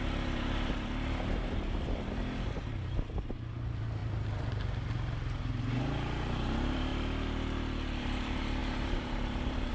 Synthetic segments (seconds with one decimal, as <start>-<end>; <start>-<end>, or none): 0.0-6.9; 8.0-9.7